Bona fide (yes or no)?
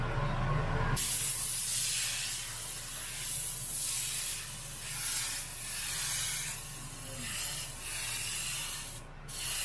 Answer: yes